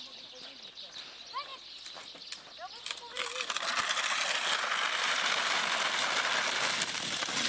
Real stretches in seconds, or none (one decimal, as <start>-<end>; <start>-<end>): 0.0-7.5